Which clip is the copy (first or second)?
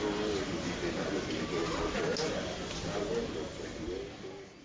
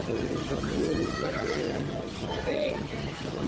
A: second